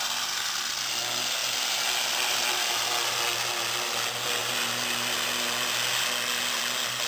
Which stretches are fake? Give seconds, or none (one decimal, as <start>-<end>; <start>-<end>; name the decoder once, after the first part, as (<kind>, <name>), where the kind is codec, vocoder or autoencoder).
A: none